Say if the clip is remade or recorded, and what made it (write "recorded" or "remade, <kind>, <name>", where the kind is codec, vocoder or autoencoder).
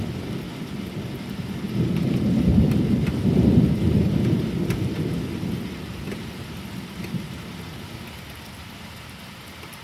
recorded